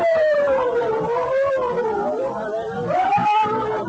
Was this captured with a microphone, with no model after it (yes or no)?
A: yes